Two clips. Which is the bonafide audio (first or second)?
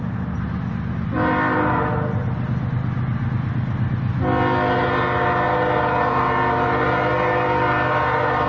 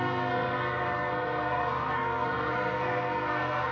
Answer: first